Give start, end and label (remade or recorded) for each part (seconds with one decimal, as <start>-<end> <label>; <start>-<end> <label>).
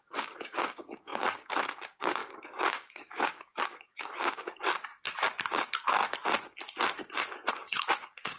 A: 0.0-4.9 remade; 4.9-5.5 recorded; 5.5-6.0 remade; 6.0-7.5 recorded; 7.5-8.4 remade